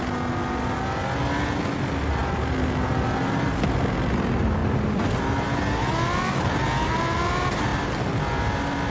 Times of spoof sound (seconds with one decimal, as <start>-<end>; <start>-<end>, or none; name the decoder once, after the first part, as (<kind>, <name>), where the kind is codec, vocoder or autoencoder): none